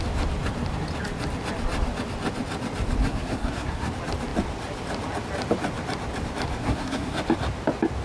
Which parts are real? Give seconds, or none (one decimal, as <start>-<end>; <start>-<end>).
0.0-3.0; 3.9-6.6; 7.2-8.0